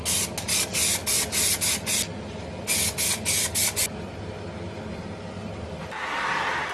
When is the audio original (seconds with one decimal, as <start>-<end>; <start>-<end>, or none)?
0.0-6.7